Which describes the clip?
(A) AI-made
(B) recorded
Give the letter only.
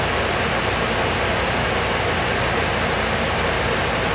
B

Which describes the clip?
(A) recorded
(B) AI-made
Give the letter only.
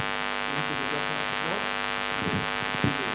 A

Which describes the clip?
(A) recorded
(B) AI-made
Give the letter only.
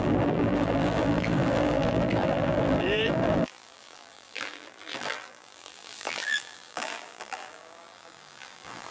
B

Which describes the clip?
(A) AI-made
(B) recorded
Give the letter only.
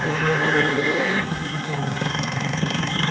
A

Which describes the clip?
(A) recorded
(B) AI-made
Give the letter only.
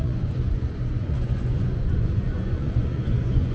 B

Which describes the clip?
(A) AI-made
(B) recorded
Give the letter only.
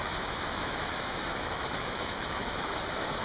A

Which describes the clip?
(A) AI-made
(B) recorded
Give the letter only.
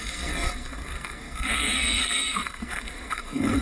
A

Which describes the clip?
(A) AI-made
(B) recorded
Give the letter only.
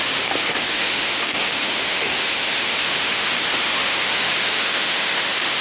A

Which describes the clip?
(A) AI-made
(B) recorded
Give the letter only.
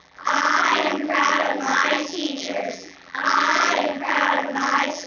A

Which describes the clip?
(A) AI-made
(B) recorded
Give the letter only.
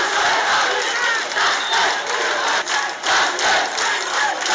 B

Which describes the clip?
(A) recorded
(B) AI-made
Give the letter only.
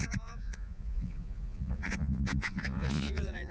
B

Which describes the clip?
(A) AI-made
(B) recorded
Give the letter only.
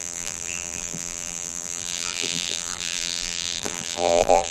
A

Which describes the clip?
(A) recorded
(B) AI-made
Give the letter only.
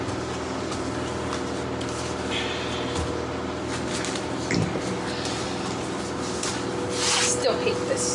A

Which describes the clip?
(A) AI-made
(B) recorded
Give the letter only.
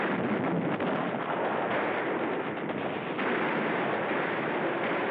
B